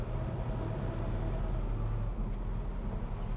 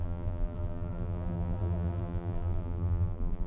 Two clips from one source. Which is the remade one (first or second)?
second